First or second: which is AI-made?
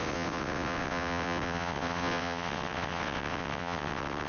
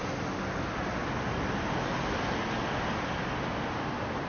first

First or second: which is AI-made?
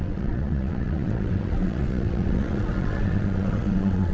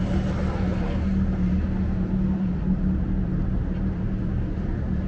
first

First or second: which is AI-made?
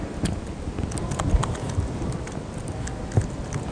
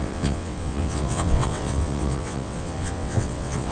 second